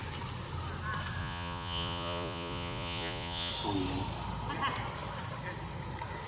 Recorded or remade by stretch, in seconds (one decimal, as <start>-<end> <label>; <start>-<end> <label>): 0.0-1.2 recorded; 1.2-3.5 remade; 3.5-6.3 recorded

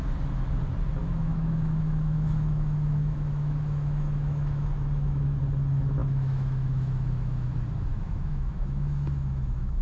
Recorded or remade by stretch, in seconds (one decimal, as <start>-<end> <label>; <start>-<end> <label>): 0.0-1.0 recorded; 1.0-5.4 remade; 5.4-6.0 recorded; 6.0-7.5 remade; 7.5-7.9 recorded; 7.9-9.8 remade

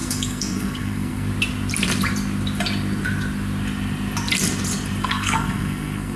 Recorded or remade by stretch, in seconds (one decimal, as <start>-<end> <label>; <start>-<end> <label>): 0.0-1.3 remade; 1.3-5.0 recorded; 5.0-6.2 remade